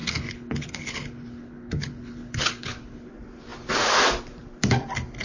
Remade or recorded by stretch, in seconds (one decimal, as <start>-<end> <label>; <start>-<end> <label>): 0.0-3.1 remade; 3.1-5.2 recorded